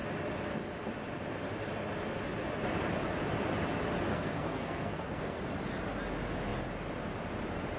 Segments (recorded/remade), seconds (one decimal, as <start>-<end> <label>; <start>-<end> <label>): 0.0-4.1 recorded; 4.1-5.4 remade; 5.4-7.8 recorded